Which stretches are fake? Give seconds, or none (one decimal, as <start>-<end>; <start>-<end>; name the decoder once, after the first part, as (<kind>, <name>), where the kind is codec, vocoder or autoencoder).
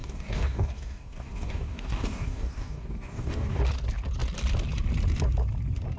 0.0-3.6 (codec, DAC)